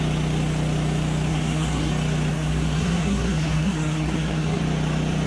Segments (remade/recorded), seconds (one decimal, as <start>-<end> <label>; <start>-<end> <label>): 0.0-1.3 recorded; 1.3-1.9 remade; 1.9-2.3 recorded; 2.3-4.6 remade; 4.6-5.3 recorded